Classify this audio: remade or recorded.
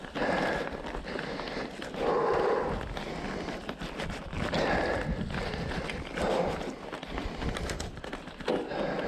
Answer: recorded